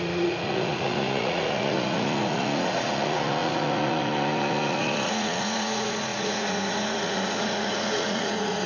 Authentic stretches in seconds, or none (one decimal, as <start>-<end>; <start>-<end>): none